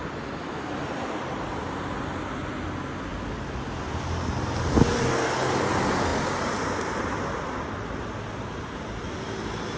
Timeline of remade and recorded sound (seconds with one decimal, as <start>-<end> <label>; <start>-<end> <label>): 0.0-9.8 recorded